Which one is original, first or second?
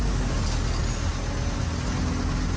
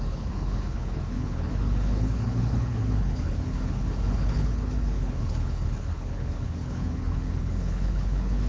first